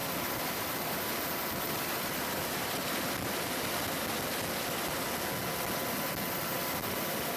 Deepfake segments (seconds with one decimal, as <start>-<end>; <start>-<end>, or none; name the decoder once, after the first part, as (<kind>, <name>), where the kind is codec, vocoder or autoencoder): 0.0-2.9 (vocoder, BigVGAN v2)